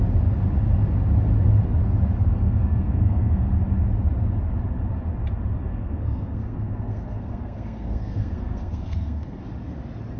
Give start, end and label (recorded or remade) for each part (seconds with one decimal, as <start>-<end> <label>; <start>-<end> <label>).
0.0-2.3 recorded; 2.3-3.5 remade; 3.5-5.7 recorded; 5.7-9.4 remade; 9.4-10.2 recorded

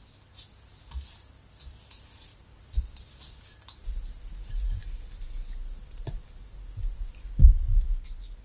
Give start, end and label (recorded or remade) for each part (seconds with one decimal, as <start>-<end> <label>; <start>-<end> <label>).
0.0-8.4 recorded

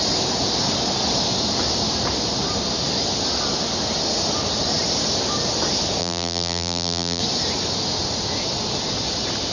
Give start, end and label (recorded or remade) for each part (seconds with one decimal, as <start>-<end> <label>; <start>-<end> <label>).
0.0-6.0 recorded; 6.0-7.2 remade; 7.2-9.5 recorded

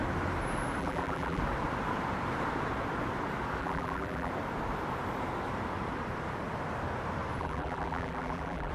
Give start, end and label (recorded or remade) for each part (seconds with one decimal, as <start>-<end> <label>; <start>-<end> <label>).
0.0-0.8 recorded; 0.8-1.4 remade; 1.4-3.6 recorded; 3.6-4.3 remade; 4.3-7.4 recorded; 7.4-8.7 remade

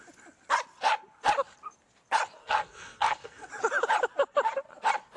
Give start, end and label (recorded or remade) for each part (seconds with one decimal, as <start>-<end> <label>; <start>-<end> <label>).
0.0-2.4 recorded; 2.4-3.5 remade; 3.5-5.2 recorded

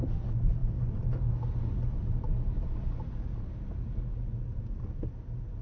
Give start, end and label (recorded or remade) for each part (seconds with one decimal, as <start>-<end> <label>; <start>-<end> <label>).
0.0-5.6 recorded

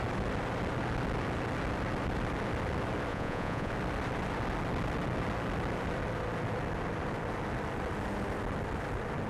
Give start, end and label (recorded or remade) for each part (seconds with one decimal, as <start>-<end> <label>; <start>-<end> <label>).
0.0-3.1 recorded; 3.1-3.7 remade; 3.7-9.3 recorded

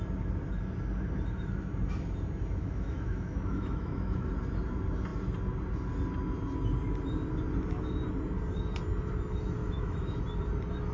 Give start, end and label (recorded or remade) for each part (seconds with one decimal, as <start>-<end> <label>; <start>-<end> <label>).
0.0-2.6 recorded; 2.6-4.3 remade; 4.3-9.6 recorded; 9.6-10.2 remade; 10.2-10.9 recorded